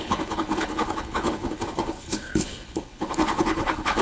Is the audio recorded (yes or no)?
no